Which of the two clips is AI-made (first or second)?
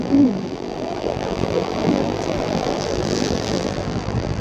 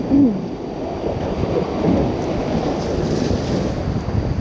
first